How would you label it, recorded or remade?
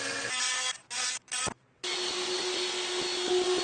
recorded